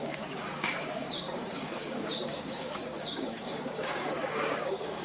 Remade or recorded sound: remade